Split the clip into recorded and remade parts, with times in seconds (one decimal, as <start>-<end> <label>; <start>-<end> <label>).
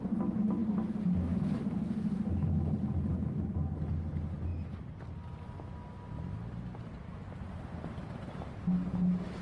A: 0.0-9.4 recorded